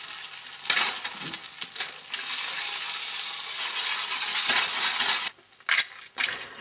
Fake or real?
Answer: real